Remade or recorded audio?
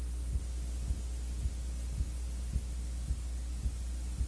recorded